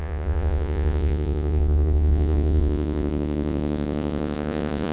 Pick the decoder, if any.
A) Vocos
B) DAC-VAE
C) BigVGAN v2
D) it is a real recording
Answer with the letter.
A